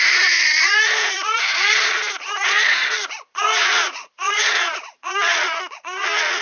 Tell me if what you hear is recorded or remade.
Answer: remade